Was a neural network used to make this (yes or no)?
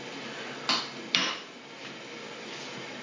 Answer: no